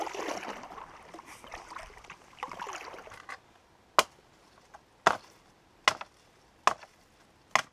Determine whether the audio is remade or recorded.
recorded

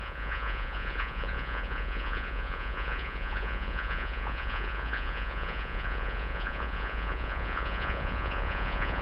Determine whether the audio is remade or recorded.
remade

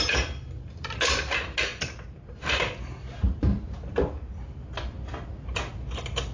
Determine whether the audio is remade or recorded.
recorded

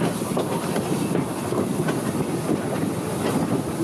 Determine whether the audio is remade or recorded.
recorded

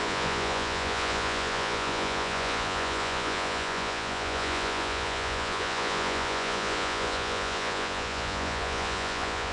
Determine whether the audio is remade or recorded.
remade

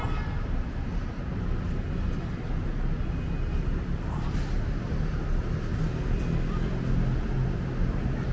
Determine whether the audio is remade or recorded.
recorded